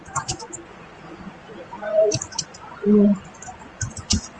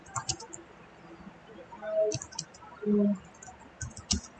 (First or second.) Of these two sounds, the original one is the second